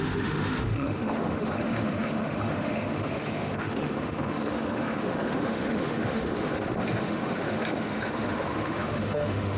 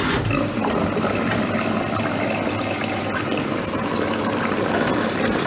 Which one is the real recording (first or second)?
second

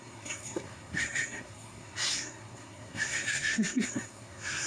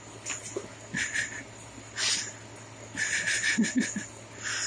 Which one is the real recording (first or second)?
second